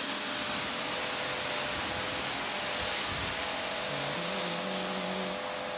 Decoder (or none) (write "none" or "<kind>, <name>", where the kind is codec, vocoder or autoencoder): none